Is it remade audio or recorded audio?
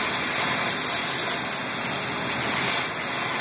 recorded